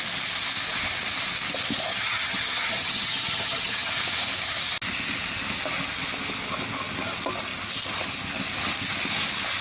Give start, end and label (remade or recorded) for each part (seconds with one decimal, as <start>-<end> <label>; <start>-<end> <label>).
0.0-1.9 recorded; 1.9-3.9 remade; 3.9-9.6 recorded